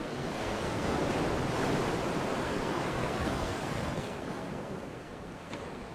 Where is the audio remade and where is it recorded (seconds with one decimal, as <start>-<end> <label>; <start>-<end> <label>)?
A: 0.0-1.0 remade; 1.0-2.4 recorded; 2.4-5.9 remade

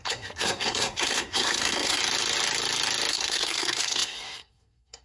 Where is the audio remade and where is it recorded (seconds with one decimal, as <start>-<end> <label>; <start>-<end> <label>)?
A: 0.0-2.0 remade; 2.0-3.1 recorded; 3.1-5.0 remade

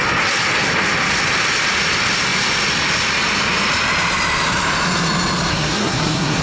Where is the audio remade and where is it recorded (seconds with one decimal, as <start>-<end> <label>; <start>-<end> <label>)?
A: 0.0-5.5 recorded; 5.5-6.4 remade

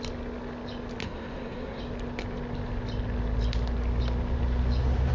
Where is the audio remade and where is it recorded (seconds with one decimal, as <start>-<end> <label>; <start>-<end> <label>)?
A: 0.0-1.0 recorded; 1.0-1.8 remade; 1.8-5.1 recorded

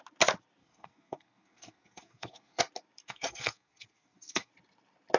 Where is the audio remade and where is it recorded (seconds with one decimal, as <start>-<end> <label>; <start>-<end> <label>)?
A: 0.0-0.6 recorded; 0.6-2.6 remade; 2.6-3.0 recorded; 3.0-4.5 remade; 4.5-5.2 recorded

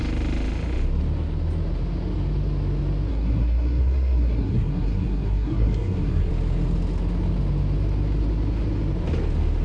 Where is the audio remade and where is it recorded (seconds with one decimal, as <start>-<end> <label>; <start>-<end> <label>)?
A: 0.0-3.1 recorded; 3.1-6.3 remade; 6.3-9.6 recorded

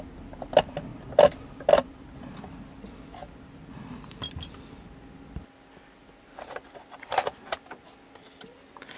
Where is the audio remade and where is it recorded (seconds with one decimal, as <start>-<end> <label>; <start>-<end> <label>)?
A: 0.0-9.0 recorded